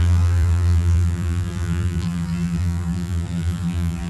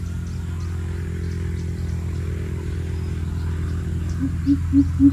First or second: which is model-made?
first